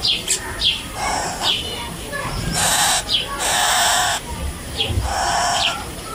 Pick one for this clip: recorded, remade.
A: remade